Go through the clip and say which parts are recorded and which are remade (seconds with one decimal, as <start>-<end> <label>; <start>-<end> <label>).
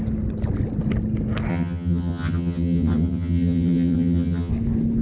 0.0-1.5 recorded; 1.5-4.5 remade; 4.5-5.0 recorded